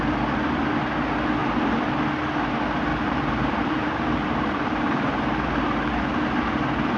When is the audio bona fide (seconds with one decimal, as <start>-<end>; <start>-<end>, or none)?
0.0-1.4; 2.0-2.9; 5.9-7.0